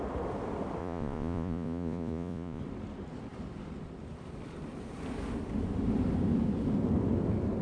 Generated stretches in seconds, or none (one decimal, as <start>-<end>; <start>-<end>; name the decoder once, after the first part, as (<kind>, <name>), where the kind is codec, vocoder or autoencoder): 0.8-2.6 (vocoder, Vocos)

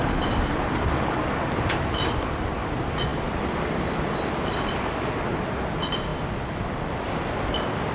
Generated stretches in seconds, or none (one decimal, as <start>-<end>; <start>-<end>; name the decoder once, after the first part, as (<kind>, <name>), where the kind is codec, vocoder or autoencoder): none

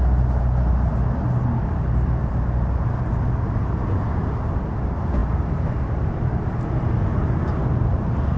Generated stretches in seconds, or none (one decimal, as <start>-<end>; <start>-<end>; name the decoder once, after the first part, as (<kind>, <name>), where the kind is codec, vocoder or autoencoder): none

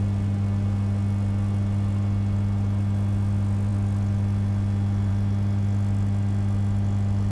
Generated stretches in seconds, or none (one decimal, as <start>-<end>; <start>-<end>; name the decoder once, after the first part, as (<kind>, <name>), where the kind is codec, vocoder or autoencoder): none

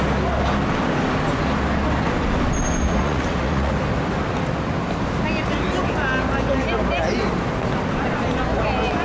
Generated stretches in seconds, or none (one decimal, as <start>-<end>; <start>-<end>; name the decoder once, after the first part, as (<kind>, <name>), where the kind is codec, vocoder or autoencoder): 2.8-3.7 (vocoder, Vocos)